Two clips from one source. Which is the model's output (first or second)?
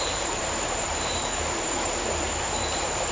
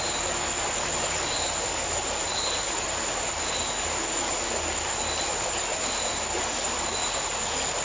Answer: first